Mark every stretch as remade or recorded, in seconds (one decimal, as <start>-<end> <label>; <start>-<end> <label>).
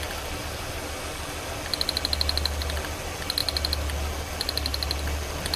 0.0-5.6 recorded